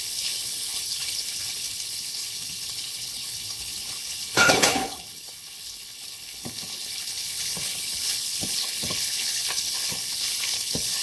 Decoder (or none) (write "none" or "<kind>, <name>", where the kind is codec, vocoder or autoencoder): codec, HILCodec